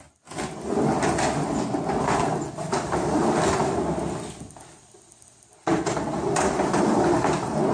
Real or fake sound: real